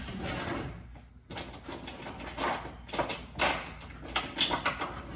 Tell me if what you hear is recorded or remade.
recorded